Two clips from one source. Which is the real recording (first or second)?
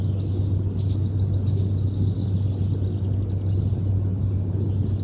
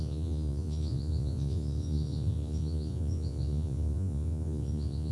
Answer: first